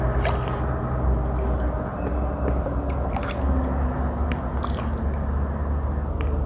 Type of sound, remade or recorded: recorded